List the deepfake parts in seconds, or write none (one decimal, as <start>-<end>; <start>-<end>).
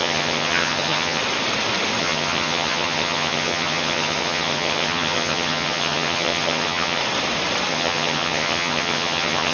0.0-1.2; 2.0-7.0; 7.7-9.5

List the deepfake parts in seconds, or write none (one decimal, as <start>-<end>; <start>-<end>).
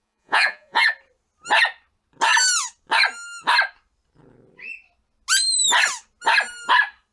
0.0-0.9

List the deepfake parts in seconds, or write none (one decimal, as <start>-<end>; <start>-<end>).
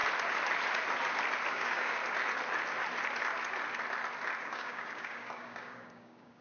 1.5-2.0; 4.4-6.4